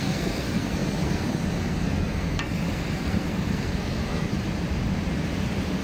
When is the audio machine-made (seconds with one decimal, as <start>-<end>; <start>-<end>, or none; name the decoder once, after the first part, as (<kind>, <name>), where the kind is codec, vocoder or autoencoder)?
0.0-4.3 (codec, SNAC)